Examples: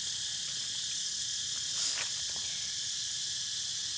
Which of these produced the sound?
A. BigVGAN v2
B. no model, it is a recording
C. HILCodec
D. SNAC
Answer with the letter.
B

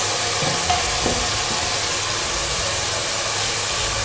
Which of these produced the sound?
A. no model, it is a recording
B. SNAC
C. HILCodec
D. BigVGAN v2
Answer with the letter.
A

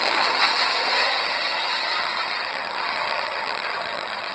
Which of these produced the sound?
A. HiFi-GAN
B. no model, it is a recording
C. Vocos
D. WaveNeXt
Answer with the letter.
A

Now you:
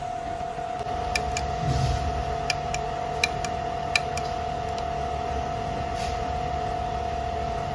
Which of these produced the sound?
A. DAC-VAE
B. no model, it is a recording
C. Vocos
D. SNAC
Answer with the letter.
B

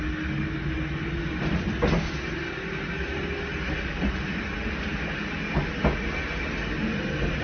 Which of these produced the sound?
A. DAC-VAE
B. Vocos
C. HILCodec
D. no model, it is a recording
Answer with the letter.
D